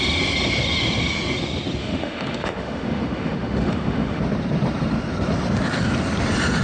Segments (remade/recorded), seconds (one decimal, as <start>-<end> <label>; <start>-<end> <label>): 0.0-1.8 recorded; 1.8-4.2 remade; 4.2-6.6 recorded